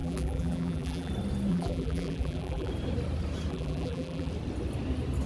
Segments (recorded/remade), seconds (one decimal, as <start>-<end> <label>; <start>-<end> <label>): 0.0-1.1 remade; 1.1-1.5 recorded; 1.5-2.7 remade; 2.7-3.5 recorded; 3.5-4.3 remade; 4.3-5.3 recorded